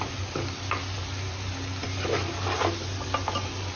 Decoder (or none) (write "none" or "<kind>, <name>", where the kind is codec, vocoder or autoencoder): none